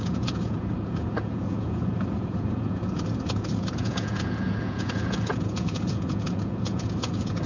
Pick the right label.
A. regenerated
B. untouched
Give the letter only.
A